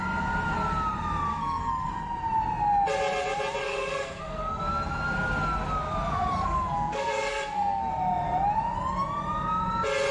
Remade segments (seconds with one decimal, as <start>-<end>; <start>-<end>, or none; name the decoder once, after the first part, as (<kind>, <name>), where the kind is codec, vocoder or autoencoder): 1.3-1.9 (codec, SNAC); 3.6-4.6; 6.1-7.9